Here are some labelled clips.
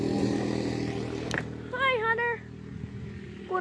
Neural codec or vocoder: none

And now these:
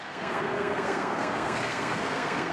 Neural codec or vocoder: codec, SNAC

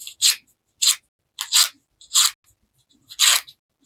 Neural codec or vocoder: none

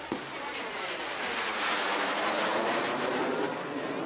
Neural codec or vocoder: none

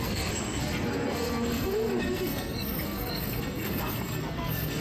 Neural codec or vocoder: codec, SNAC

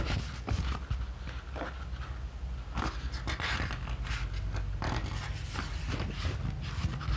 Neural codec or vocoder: none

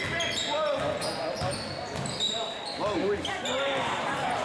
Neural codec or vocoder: none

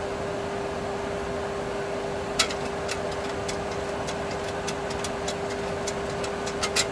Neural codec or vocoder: none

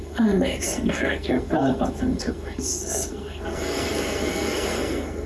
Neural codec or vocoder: codec, SNAC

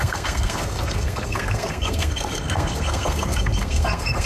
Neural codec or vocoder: codec, SNAC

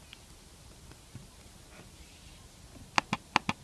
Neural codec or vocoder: none